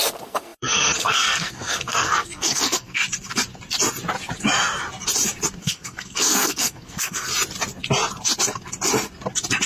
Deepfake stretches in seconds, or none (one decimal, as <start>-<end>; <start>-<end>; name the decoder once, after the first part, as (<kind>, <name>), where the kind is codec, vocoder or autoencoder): 0.0-3.0 (codec, SNAC); 5.6-7.3